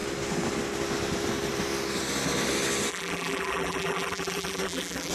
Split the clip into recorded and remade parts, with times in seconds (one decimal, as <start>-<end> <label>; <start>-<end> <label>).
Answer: 0.0-2.9 recorded; 2.9-5.1 remade